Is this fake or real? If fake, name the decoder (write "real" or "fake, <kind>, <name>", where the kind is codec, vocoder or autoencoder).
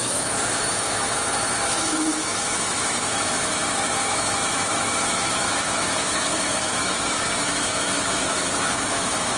fake, autoencoder, DAC-VAE